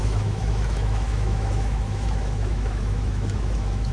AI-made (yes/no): yes